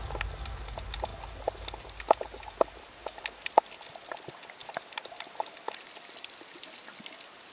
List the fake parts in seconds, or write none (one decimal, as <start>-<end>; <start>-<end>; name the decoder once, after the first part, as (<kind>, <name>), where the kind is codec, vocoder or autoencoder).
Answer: none